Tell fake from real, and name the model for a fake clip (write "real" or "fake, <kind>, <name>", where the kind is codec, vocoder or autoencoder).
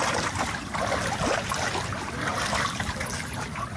fake, vocoder, BigVGAN v2